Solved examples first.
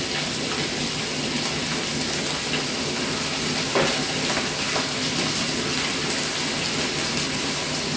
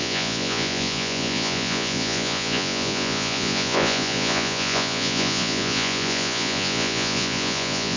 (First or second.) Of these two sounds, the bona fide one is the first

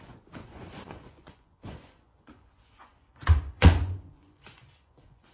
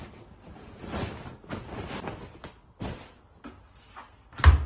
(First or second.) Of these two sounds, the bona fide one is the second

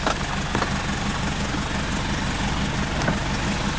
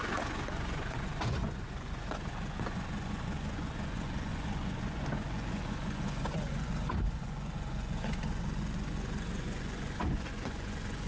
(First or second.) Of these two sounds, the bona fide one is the first